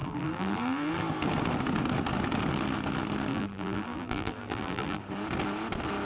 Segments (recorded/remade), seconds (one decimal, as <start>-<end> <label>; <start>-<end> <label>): 0.0-0.9 remade; 0.9-3.3 recorded; 3.3-5.0 remade; 5.0-6.0 recorded